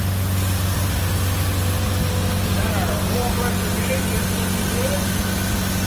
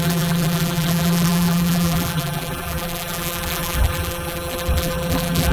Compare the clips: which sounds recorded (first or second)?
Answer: first